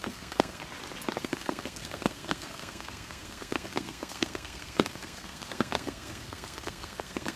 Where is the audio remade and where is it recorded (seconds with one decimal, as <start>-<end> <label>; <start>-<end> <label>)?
0.0-0.6 remade; 0.6-1.2 recorded; 1.2-7.4 remade